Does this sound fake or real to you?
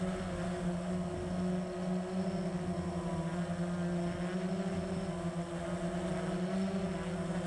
real